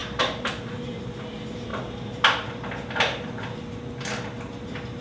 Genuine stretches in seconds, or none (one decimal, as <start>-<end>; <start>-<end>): 0.0-5.0